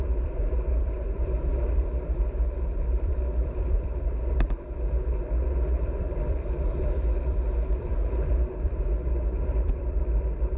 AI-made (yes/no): yes